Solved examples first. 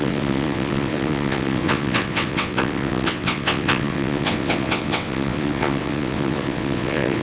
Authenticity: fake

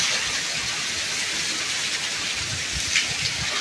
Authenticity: real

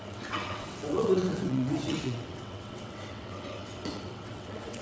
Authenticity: fake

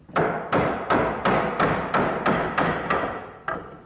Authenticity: real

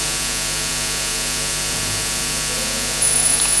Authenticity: fake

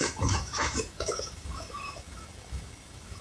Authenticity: fake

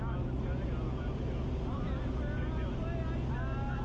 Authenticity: real